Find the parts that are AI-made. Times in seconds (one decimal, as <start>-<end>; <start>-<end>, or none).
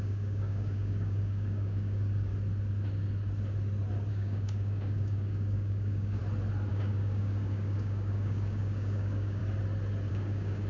0.0-2.3; 4.1-6.2; 6.7-9.4; 10.1-10.7